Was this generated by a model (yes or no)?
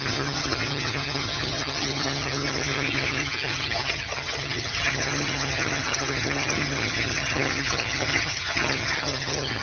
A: yes